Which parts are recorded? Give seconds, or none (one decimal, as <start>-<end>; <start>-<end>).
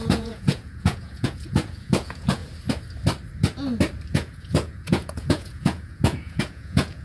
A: 2.4-4.1